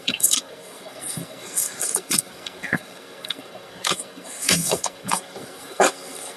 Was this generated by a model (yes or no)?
yes